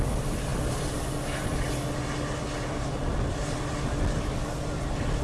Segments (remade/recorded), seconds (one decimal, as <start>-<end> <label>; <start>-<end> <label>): 0.0-5.2 recorded